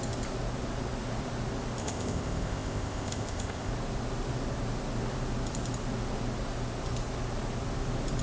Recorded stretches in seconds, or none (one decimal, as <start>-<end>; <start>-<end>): 0.0-1.8; 3.7-8.2